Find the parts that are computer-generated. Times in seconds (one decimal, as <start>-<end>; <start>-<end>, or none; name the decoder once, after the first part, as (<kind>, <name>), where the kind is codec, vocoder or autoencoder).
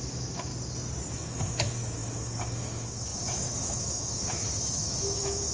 0.0-0.5 (autoencoder, DAC-VAE); 1.1-5.5